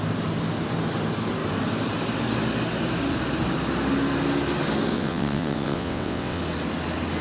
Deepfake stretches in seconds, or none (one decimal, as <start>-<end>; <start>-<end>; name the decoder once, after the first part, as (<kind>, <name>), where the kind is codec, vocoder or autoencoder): 4.9-6.4 (vocoder, WaveNeXt)